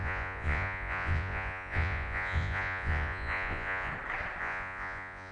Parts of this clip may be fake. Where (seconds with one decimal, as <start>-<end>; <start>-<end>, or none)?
0.0-3.9; 4.4-5.3